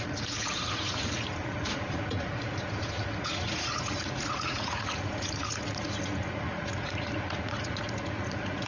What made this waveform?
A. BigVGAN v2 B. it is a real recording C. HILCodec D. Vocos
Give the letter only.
D